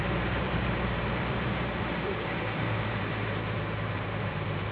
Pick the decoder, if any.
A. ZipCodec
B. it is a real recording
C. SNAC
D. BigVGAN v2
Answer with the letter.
D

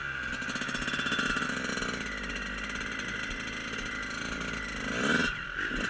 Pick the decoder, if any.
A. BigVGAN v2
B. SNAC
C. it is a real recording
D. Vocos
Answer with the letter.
C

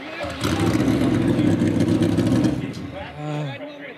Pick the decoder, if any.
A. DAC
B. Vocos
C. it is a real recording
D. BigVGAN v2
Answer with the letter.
C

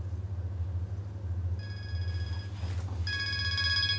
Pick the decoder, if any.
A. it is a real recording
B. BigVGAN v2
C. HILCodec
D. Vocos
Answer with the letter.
A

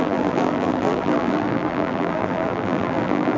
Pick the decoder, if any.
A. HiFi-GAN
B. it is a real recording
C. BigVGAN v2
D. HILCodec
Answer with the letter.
C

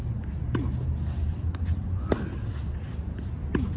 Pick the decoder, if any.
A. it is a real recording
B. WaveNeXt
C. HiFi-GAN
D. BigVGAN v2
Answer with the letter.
A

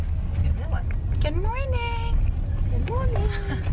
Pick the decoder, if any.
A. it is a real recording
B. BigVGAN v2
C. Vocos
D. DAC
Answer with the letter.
A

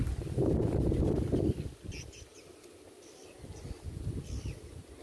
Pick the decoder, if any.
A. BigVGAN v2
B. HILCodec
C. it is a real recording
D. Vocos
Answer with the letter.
C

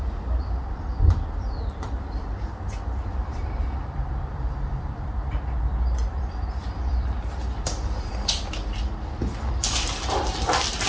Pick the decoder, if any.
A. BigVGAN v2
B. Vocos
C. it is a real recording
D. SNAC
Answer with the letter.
A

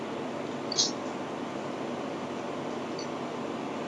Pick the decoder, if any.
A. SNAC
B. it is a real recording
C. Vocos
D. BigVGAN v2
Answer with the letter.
B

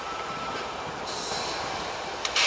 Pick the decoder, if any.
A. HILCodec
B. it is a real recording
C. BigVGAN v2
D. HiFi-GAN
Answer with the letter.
C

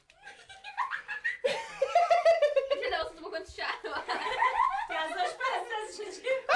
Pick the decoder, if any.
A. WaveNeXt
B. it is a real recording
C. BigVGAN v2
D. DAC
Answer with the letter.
C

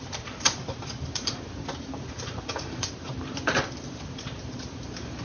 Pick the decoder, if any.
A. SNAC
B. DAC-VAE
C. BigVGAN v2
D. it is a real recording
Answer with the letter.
C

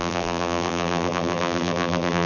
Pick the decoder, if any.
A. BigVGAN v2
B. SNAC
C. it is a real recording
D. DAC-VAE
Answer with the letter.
A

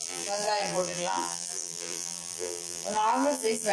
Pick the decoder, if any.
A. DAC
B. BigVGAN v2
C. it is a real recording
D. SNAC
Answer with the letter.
B